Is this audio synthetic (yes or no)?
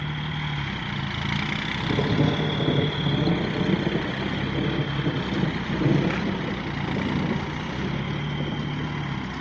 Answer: no